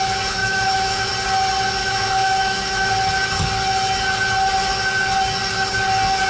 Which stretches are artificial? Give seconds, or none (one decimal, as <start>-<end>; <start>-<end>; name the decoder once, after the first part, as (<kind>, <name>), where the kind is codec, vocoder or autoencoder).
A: 0.4-1.1 (autoencoder, DAC-VAE); 1.8-2.9